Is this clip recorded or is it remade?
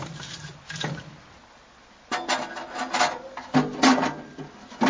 recorded